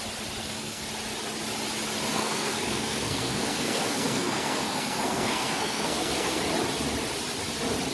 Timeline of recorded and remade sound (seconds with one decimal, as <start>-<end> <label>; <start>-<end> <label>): 0.0-0.4 recorded; 0.4-0.9 remade; 0.9-2.1 recorded; 2.1-6.4 remade; 6.4-7.9 recorded